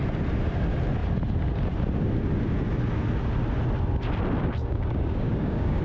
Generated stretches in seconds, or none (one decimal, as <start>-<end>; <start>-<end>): 4.6-5.8